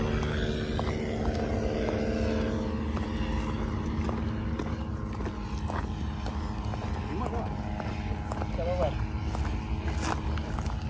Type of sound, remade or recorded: recorded